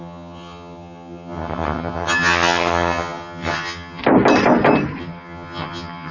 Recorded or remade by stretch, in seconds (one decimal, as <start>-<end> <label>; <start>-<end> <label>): 0.0-4.0 remade; 4.0-5.0 recorded; 5.0-6.1 remade

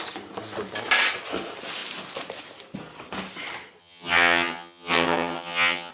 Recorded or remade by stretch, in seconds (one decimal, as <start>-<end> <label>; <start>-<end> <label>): 0.0-3.8 recorded; 3.8-5.9 remade